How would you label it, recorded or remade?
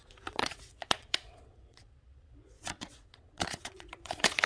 remade